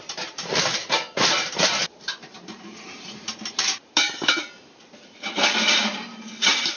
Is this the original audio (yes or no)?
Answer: no